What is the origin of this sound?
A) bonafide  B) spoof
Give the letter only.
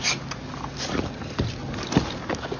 A